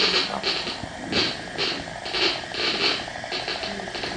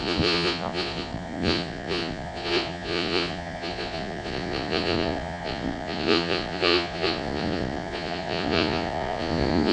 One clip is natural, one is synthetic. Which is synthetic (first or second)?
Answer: second